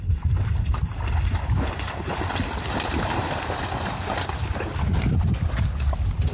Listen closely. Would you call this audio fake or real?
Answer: real